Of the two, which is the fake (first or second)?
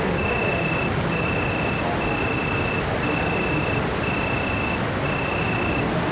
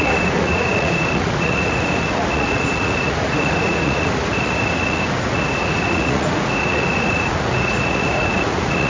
second